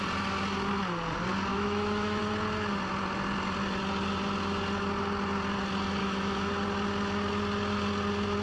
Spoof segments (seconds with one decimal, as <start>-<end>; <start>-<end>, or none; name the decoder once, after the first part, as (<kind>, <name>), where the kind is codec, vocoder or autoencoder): 1.5-2.2 (autoencoder, DAC-VAE); 6.0-6.5